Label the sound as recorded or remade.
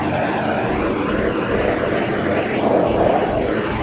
recorded